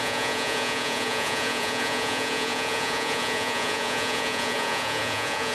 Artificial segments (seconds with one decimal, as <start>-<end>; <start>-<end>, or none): 0.0-5.5